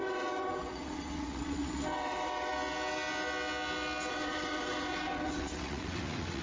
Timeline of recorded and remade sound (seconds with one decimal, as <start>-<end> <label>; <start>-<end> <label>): 0.0-2.5 remade; 2.5-4.1 recorded; 4.1-6.4 remade